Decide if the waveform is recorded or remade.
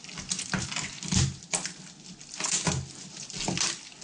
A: recorded